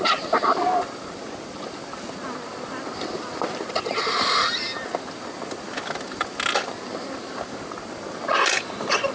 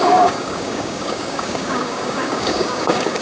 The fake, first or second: second